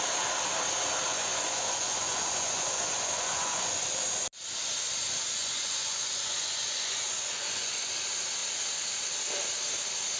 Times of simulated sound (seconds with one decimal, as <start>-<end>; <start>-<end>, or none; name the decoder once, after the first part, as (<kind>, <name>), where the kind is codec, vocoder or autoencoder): 1.1-3.8 (vocoder, Vocos); 5.4-7.9